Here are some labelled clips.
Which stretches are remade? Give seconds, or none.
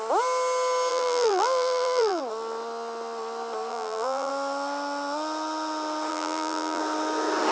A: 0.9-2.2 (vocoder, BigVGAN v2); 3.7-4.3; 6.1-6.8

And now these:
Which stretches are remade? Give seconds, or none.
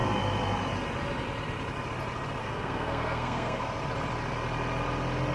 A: 2.4-3.7 (codec, SNAC)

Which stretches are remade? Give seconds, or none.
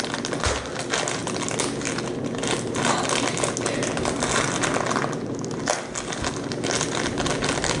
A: none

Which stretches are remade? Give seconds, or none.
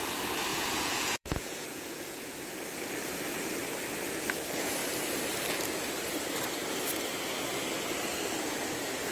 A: 0.5-2.3 (vocoder, Vocos)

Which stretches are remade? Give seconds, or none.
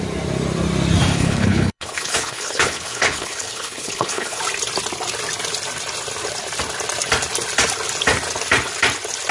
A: 1.1-4.4 (codec, HILCodec)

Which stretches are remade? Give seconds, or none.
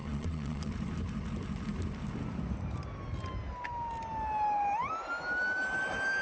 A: 0.0-0.7 (vocoder, Vocos)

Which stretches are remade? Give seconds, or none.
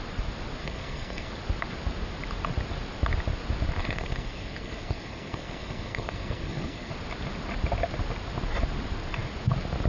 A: 0.6-1.3 (codec, SNAC); 3.8-6.9